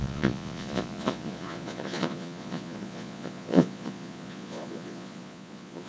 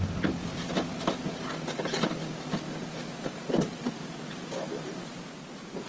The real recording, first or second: second